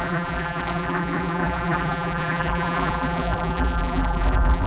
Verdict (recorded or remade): remade